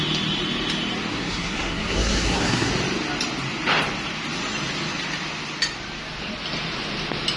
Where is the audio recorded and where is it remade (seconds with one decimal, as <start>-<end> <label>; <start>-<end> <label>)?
0.0-1.1 recorded; 1.1-2.7 remade; 2.7-7.4 recorded